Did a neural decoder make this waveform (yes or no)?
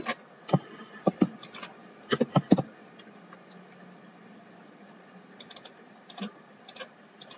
no